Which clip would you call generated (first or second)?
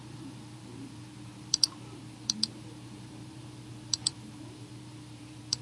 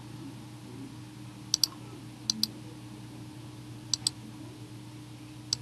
first